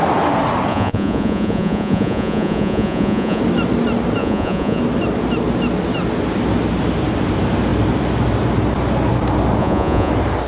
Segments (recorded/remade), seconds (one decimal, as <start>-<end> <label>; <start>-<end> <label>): 0.0-0.7 recorded; 0.7-3.4 remade; 3.4-4.2 recorded; 4.2-4.8 remade; 4.8-9.6 recorded; 9.6-10.1 remade; 10.1-10.5 recorded